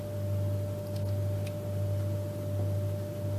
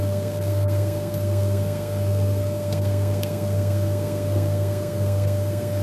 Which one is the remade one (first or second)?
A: second